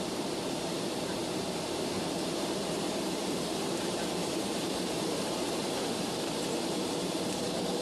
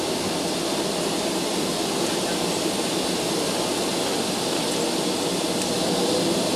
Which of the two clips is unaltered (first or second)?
second